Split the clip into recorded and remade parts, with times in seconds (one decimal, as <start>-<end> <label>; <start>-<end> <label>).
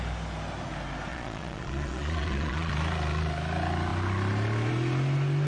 0.0-1.1 recorded; 1.1-2.7 remade; 2.7-5.5 recorded